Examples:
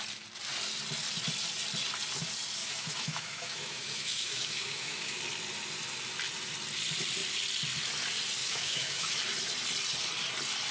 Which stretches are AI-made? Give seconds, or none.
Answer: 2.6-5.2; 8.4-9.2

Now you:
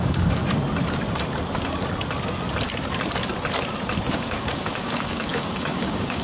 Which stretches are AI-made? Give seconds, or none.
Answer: 0.0-0.4; 4.1-6.2

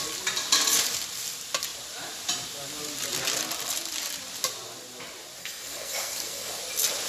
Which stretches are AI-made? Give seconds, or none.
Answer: 5.4-6.6